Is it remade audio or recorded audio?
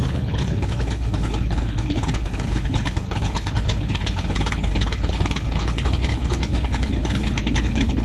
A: remade